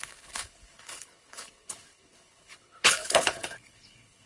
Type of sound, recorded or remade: remade